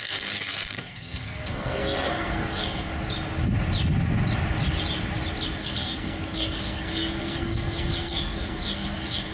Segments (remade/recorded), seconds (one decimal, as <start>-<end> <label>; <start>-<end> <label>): 0.0-2.9 remade; 2.9-5.6 recorded; 5.6-9.3 remade